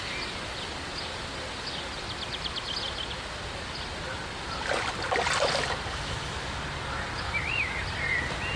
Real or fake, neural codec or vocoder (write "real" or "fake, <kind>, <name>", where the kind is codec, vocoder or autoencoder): real